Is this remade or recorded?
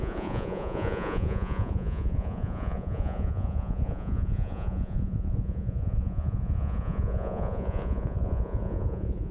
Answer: remade